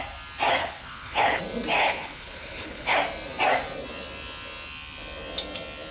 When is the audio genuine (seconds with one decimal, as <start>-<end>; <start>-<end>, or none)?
0.0-0.6; 1.4-1.8; 3.0-5.9